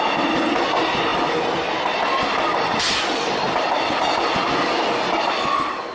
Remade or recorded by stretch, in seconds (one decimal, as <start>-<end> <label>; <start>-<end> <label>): 0.0-1.1 recorded; 1.1-4.0 remade; 4.0-5.9 recorded